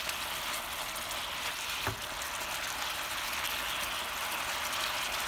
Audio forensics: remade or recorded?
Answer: recorded